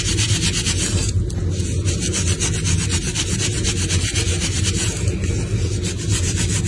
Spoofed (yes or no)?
no